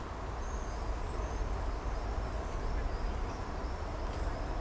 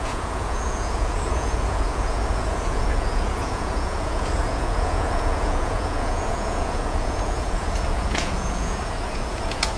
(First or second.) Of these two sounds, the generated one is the second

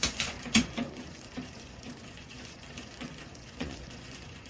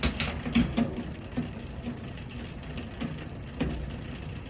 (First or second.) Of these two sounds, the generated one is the first